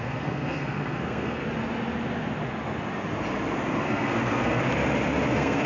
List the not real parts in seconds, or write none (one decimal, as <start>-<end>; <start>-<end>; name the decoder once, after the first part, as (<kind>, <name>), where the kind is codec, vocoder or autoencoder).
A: 0.0-1.4 (codec, SNAC); 3.8-4.6; 5.3-5.7